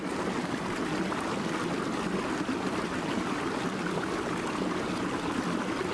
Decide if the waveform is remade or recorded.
recorded